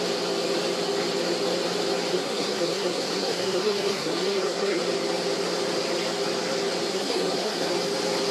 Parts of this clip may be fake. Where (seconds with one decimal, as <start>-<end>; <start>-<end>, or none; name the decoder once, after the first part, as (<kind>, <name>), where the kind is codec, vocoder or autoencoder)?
2.1-4.8 (codec, SNAC); 6.9-7.7